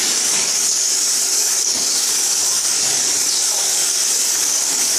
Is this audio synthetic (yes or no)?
yes